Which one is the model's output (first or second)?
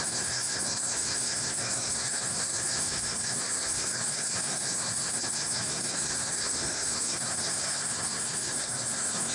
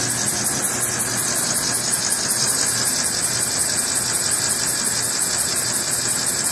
first